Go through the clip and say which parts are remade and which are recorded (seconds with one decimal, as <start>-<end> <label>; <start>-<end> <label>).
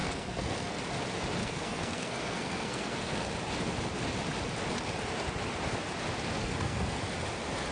0.0-0.8 remade; 0.8-1.4 recorded; 1.4-3.3 remade; 3.3-6.4 recorded; 6.4-7.0 remade; 7.0-7.7 recorded